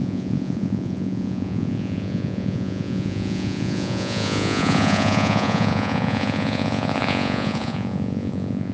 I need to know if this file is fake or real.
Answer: fake